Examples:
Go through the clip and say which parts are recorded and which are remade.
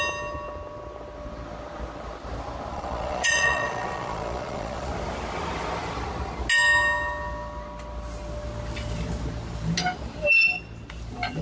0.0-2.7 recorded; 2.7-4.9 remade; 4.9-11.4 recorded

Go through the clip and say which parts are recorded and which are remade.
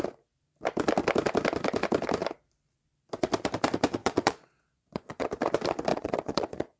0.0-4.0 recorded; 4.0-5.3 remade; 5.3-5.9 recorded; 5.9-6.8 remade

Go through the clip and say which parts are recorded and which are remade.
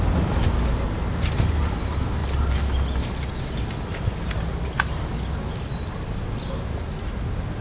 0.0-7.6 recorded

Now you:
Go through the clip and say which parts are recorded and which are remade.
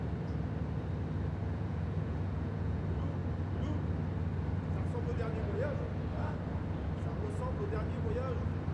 0.0-1.4 recorded; 1.4-2.8 remade; 2.8-8.7 recorded